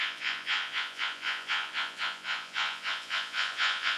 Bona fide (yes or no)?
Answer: no